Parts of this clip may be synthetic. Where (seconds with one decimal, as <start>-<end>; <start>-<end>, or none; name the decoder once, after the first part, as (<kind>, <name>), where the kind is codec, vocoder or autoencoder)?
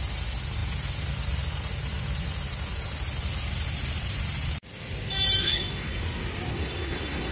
5.4-6.0 (codec, SNAC); 6.5-7.3